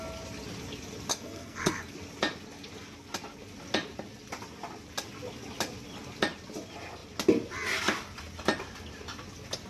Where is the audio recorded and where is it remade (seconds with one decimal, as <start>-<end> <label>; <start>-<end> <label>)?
0.0-1.1 recorded; 1.1-1.8 remade; 1.8-9.7 recorded